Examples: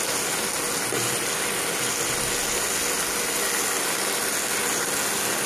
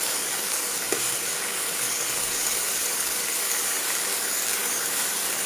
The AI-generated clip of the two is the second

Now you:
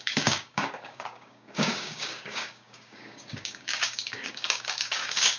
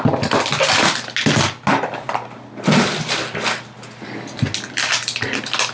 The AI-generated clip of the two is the first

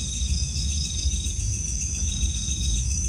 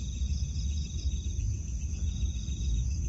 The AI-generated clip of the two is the first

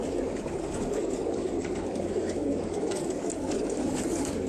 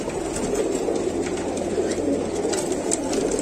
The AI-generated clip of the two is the first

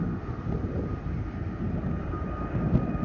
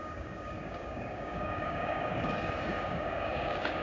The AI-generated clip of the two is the second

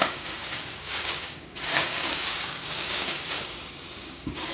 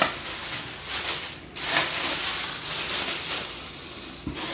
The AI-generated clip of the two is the first